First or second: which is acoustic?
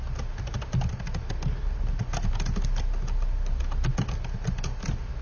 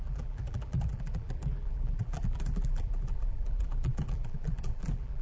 first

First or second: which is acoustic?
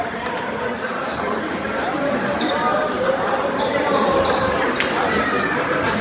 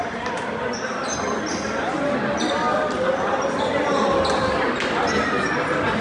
second